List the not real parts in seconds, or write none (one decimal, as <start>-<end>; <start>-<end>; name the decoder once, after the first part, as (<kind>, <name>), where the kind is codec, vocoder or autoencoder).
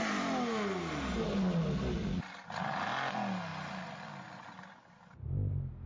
none